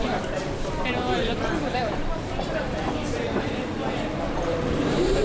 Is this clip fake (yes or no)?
yes